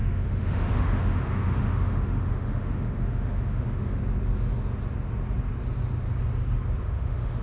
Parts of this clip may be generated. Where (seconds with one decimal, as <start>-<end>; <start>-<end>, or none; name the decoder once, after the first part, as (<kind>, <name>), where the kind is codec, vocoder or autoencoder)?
0.0-4.0 (autoencoder, DAC-VAE); 6.8-7.4